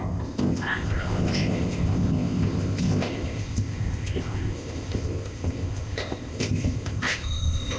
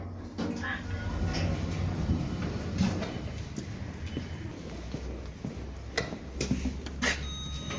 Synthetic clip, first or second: first